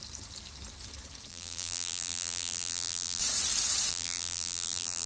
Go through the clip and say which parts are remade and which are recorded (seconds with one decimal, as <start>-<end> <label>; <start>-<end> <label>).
0.0-1.3 recorded; 1.3-3.2 remade; 3.2-3.9 recorded; 3.9-5.1 remade